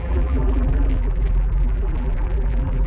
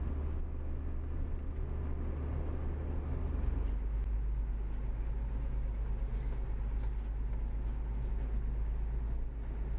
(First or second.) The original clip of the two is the second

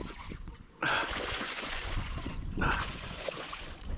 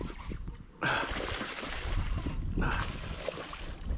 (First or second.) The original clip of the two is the second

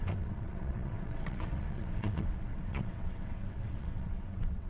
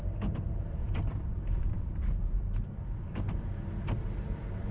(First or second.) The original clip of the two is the second